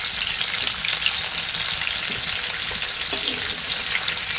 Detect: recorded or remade recorded